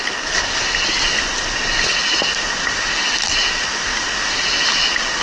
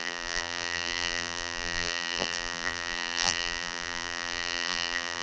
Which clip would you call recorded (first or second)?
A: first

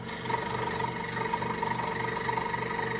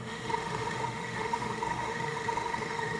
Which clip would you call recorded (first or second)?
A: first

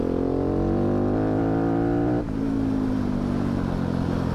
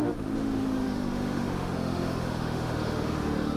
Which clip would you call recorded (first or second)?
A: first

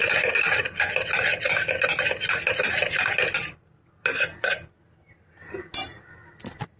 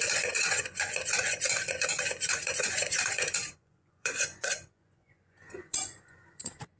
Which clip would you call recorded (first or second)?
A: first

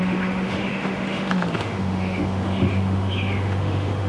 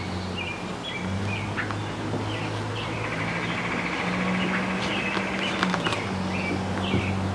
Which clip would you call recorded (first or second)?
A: second